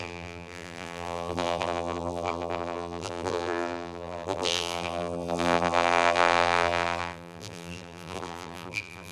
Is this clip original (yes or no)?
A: no